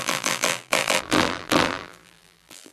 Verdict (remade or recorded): remade